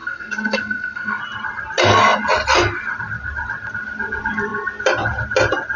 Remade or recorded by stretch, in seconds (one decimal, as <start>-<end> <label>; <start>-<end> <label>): 0.0-1.2 remade; 1.2-5.8 recorded